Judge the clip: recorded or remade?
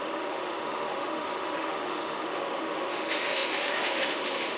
remade